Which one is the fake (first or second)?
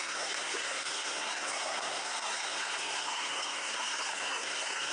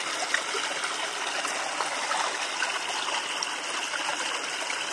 first